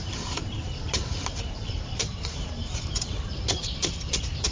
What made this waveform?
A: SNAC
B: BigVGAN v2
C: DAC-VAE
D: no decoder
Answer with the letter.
B